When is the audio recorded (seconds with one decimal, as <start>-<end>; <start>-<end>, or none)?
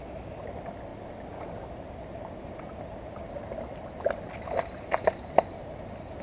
0.0-6.2